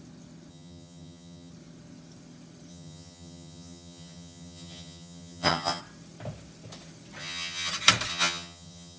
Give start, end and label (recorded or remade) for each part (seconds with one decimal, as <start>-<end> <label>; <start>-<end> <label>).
0.0-0.5 recorded; 0.5-1.5 remade; 1.5-2.7 recorded; 2.7-5.8 remade; 5.8-7.2 recorded; 7.2-7.7 remade; 7.7-8.1 recorded; 8.1-9.0 remade